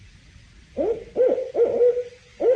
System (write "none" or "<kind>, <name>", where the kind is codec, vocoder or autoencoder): none